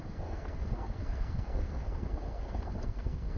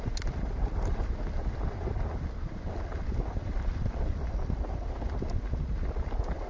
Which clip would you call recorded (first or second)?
second